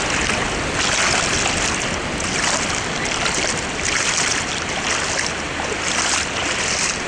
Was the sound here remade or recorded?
recorded